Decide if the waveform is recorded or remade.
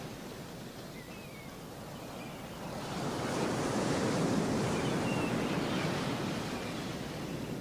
recorded